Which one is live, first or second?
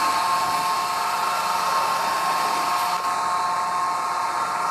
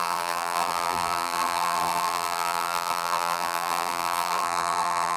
first